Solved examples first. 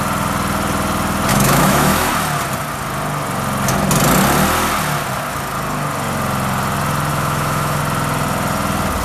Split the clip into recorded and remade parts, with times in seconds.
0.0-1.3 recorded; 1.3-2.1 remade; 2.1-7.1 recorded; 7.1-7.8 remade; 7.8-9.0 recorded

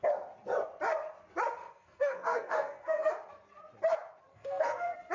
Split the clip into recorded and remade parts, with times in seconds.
0.0-1.6 recorded; 1.6-3.1 remade; 3.1-4.3 recorded; 4.3-5.1 remade

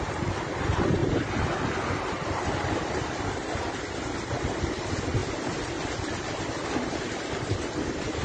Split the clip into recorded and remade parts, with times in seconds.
0.0-8.2 recorded

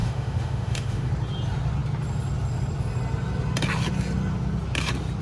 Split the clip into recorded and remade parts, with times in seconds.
0.0-1.1 remade; 1.1-5.2 recorded

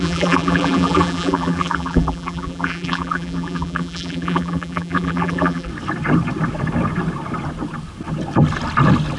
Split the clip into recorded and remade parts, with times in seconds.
0.0-5.7 remade; 5.7-9.2 recorded

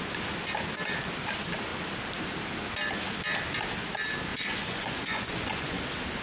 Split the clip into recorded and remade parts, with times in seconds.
0.0-4.3 recorded; 4.3-5.8 remade; 5.8-6.2 recorded

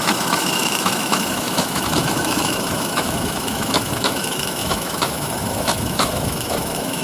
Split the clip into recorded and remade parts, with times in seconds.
0.0-7.0 remade